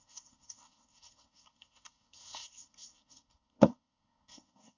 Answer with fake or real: fake